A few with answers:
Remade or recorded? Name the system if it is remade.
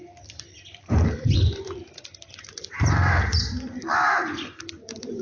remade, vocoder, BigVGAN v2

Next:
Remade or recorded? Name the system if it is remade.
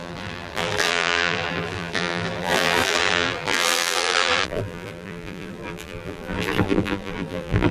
remade, vocoder, BigVGAN v2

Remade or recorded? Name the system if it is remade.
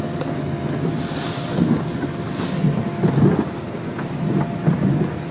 recorded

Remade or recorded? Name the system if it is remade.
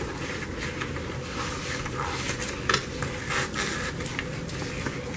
recorded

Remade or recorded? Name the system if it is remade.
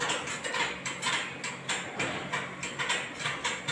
recorded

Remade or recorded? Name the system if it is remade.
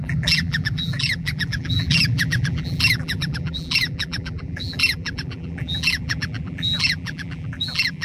remade, vocoder, BigVGAN v2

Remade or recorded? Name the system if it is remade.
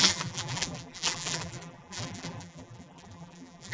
remade, vocoder, BigVGAN v2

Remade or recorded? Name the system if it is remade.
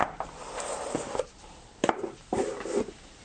remade, vocoder, BigVGAN v2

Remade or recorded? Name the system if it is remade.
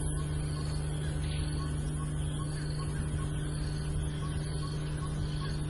recorded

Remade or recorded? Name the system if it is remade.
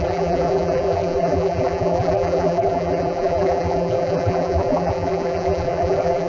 remade, vocoder, BigVGAN v2